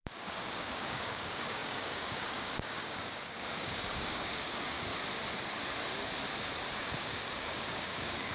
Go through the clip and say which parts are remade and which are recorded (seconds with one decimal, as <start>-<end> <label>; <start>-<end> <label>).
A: 0.0-4.9 remade; 4.9-6.8 recorded; 6.8-8.3 remade